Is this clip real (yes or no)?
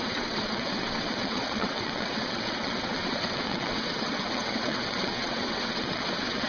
no